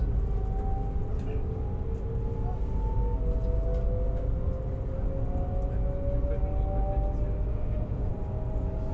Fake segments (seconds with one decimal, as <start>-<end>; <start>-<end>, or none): 7.5-8.1